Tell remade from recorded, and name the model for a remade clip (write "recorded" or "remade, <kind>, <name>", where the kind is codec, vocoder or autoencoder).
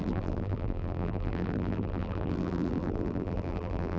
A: remade, vocoder, BigVGAN v2